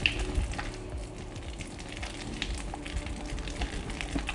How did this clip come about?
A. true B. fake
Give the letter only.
A